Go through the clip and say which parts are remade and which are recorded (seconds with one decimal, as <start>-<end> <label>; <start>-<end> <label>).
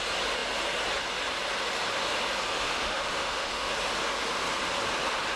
0.0-2.5 recorded; 2.5-3.7 remade; 3.7-5.4 recorded